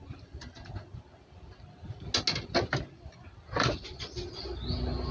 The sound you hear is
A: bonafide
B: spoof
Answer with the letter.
A